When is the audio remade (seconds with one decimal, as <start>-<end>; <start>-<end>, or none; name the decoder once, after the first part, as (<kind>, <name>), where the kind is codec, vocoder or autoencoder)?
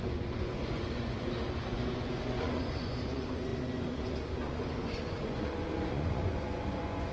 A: 0.0-7.1 (vocoder, Vocos)